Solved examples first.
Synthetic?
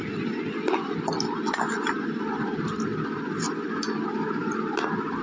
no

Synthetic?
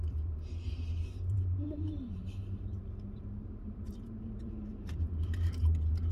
yes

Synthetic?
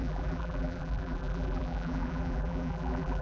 yes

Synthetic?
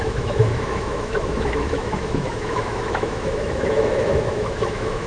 yes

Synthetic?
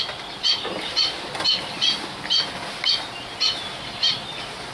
no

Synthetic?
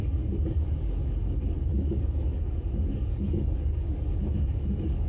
yes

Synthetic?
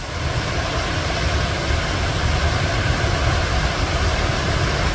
no